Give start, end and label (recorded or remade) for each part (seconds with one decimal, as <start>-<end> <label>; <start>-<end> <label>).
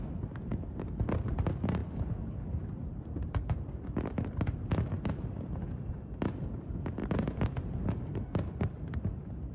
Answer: 0.0-1.8 recorded; 1.8-2.4 remade; 2.4-2.8 recorded; 2.8-5.9 remade; 5.9-7.0 recorded; 7.0-8.5 remade; 8.5-9.5 recorded